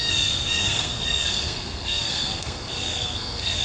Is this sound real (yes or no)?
no